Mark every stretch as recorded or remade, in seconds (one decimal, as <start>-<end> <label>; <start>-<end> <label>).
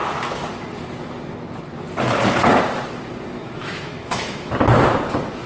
0.0-3.4 recorded; 3.4-4.5 remade; 4.5-5.5 recorded